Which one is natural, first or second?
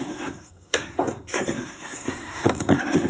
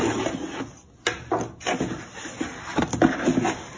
second